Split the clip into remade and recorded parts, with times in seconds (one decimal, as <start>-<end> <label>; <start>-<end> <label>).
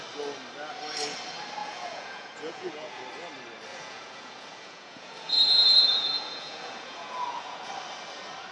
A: 0.0-1.6 recorded; 1.6-3.0 remade; 3.0-3.7 recorded; 3.7-7.7 remade; 7.7-8.5 recorded